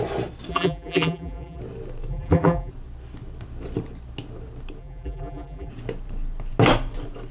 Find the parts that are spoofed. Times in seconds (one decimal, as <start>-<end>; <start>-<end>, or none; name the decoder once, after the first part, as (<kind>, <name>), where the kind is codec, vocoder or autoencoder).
0.5-1.6 (vocoder, BigVGAN v2); 2.1-2.7; 4.8-5.7